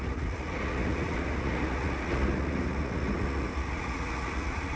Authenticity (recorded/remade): remade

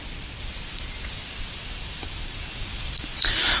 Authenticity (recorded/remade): recorded